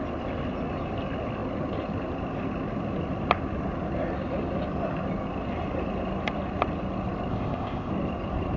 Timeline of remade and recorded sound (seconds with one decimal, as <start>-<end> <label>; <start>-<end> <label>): 0.0-7.3 recorded; 7.3-7.9 remade; 7.9-8.6 recorded